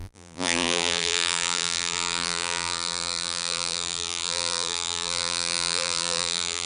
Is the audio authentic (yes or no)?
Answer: no